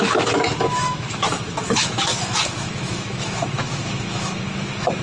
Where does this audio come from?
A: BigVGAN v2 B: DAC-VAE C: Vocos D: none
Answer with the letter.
B